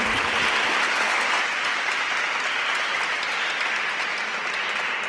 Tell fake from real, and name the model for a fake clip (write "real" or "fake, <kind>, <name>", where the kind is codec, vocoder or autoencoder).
fake, vocoder, BigVGAN v2